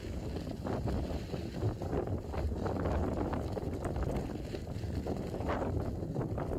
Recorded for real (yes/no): no